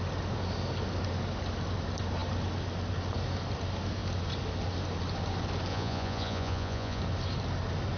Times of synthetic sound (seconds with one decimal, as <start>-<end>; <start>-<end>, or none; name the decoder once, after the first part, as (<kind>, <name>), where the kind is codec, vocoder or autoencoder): 5.7-7.0 (vocoder, Vocos)